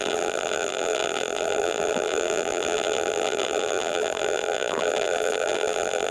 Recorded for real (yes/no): no